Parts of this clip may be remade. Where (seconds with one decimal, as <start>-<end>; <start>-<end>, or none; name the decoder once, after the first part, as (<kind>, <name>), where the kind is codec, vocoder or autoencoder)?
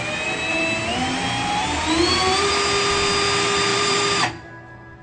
0.5-2.5 (vocoder, BigVGAN v2); 3.7-4.3